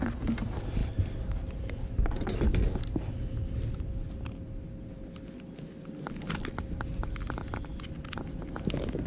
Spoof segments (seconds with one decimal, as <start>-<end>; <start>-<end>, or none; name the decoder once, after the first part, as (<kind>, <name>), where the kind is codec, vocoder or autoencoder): none